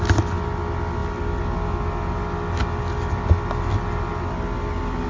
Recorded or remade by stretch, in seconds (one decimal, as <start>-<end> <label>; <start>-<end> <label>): 0.0-5.1 recorded

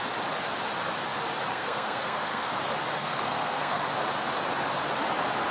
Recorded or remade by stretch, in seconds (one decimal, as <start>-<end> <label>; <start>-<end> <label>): 0.0-1.5 recorded; 1.5-2.6 remade; 2.6-3.0 recorded; 3.0-3.8 remade; 3.8-5.5 recorded